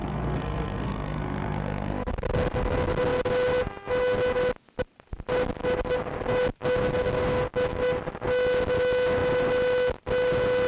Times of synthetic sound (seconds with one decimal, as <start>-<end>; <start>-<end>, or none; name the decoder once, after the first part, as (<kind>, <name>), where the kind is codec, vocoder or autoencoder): 0.0-1.9 (codec, SNAC)